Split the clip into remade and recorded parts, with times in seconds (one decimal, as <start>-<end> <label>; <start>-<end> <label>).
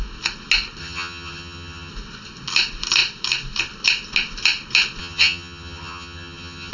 0.0-0.8 recorded; 0.8-1.9 remade; 1.9-5.0 recorded; 5.0-6.7 remade